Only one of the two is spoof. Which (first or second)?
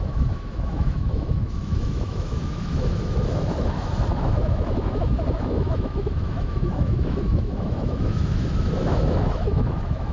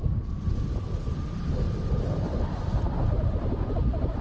first